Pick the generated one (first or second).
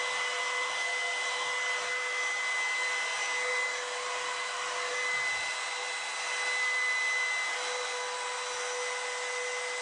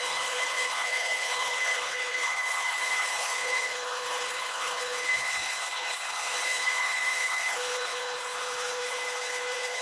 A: second